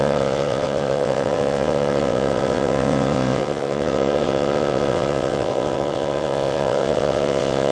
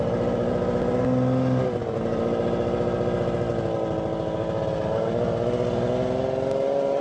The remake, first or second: first